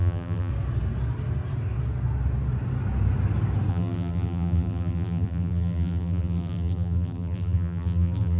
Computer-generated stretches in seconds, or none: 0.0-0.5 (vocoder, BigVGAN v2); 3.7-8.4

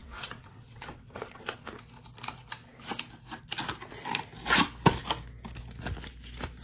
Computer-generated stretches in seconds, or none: 0.0-1.7 (vocoder, WaveNeXt)

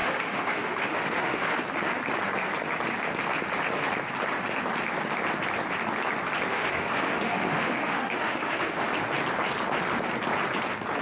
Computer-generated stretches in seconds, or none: 0.0-1.6 (autoencoder, DAC-VAE); 6.5-8.9

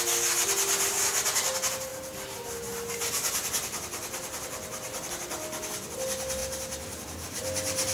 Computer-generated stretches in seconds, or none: 6.4-7.1 (vocoder, BigVGAN v2)